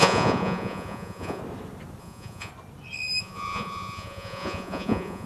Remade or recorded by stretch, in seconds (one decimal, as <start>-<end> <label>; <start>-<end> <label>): 0.0-1.4 remade; 1.4-2.0 recorded; 2.0-2.5 remade; 2.5-3.2 recorded; 3.2-5.3 remade